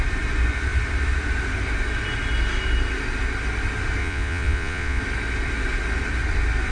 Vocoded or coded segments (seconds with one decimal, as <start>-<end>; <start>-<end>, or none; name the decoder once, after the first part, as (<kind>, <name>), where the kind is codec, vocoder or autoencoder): 4.0-5.0 (vocoder, Vocos)